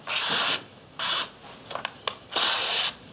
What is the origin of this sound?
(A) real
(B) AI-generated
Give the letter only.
A